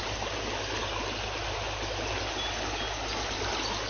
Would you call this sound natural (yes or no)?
yes